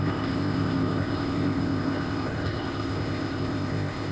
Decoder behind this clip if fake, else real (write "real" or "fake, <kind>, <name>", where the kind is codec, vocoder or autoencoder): fake, codec, ZipCodec